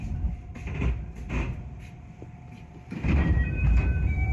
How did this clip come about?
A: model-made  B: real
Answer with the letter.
A